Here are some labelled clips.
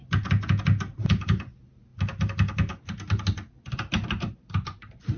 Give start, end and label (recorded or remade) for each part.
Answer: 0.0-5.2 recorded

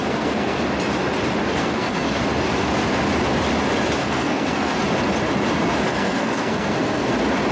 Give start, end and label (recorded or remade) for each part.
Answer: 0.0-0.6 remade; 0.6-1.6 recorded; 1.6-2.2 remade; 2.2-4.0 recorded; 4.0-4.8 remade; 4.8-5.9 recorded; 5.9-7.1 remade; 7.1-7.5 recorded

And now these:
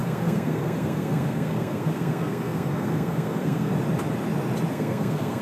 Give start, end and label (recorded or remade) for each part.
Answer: 0.0-3.7 remade; 3.7-4.7 recorded; 4.7-5.4 remade

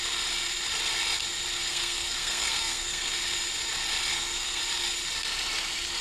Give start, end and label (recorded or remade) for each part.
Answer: 0.0-1.7 recorded; 1.7-3.1 remade; 3.1-4.1 recorded; 4.1-4.6 remade; 4.6-6.0 recorded

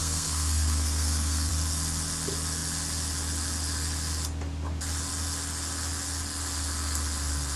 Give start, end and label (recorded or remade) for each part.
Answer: 0.0-1.5 remade; 1.5-7.6 recorded